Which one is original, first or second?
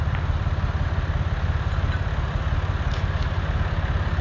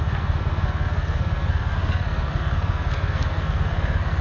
first